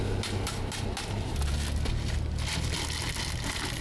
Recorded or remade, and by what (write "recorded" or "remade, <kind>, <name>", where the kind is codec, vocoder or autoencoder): recorded